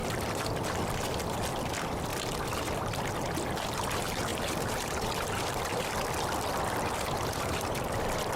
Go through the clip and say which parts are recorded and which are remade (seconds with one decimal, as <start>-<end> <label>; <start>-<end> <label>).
0.0-2.1 recorded; 2.1-3.1 remade; 3.1-4.3 recorded; 4.3-5.7 remade; 5.7-8.4 recorded